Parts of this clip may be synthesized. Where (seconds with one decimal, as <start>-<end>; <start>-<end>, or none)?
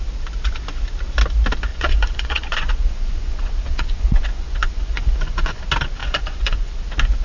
1.7-5.6; 6.0-6.8